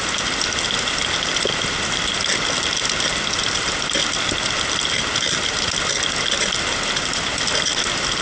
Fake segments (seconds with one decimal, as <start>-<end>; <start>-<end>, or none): none